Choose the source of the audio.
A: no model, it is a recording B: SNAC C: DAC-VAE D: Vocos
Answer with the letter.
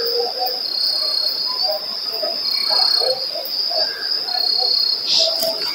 A